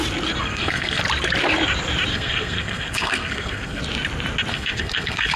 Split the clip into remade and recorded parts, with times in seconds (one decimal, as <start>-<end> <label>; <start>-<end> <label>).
0.0-0.4 recorded; 0.4-1.0 remade; 1.0-2.1 recorded; 2.1-3.8 remade; 3.8-4.5 recorded; 4.5-5.4 remade